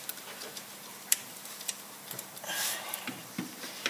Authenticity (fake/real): fake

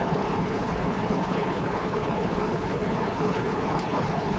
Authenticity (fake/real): fake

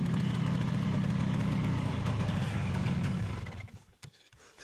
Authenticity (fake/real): fake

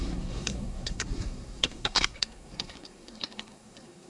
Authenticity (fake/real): fake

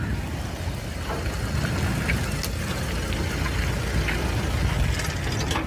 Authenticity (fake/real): real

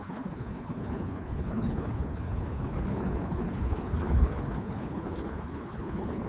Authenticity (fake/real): fake